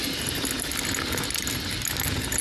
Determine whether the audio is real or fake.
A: real